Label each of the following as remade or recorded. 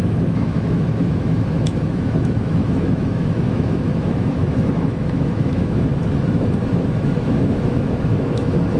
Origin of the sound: remade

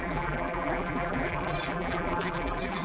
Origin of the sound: remade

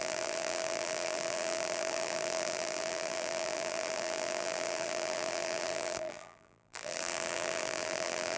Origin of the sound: remade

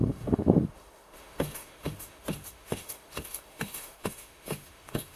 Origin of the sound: remade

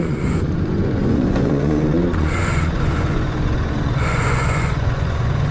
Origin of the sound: remade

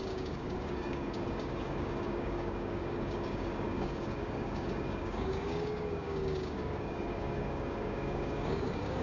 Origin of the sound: remade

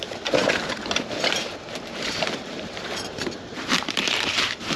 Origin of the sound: remade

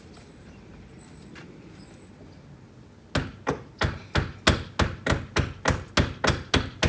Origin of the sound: recorded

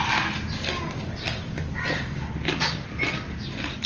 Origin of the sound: recorded